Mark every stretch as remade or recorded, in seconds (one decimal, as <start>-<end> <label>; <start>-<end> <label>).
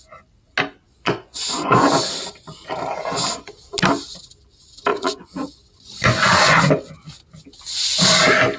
0.0-0.9 recorded; 0.9-1.9 remade; 1.9-4.9 recorded; 4.9-6.6 remade; 6.6-8.6 recorded